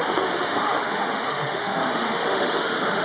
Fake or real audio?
fake